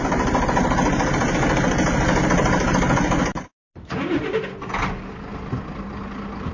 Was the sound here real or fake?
real